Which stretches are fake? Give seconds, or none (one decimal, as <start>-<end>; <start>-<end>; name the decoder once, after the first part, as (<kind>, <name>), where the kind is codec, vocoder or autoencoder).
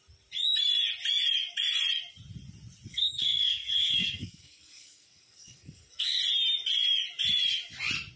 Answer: 2.9-6.2 (codec, SNAC)